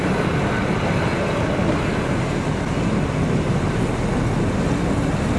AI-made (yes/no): no